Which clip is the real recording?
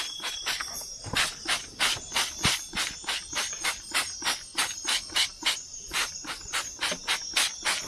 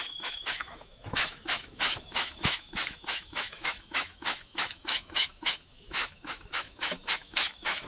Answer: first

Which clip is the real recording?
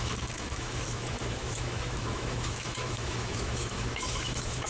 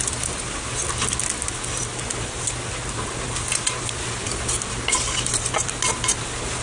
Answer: second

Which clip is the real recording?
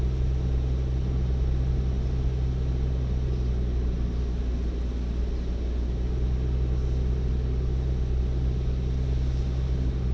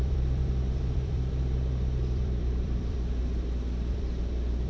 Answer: first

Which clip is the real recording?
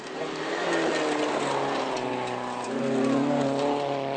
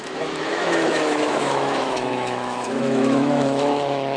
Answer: first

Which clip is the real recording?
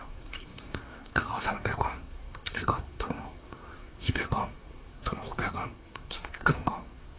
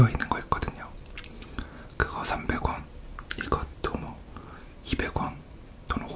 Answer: second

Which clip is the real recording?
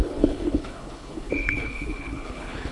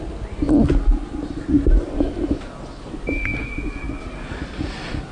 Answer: second